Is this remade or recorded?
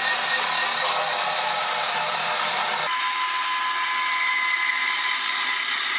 recorded